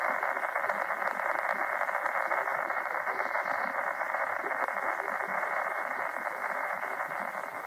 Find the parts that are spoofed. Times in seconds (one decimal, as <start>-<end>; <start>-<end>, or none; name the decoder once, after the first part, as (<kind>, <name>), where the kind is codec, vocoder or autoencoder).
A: 2.5-4.6 (vocoder, BigVGAN v2); 5.3-6.0; 6.4-7.0